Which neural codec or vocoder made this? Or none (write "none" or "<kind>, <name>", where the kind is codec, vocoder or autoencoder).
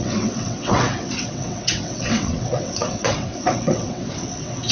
vocoder, WaveNeXt